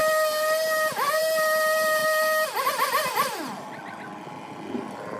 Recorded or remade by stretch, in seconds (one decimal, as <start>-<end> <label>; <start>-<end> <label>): 0.0-5.2 recorded